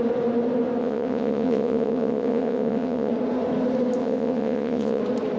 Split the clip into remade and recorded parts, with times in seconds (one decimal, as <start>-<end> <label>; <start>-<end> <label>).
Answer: 0.0-0.8 recorded; 0.8-3.1 remade; 3.1-4.0 recorded; 4.0-5.0 remade; 5.0-5.4 recorded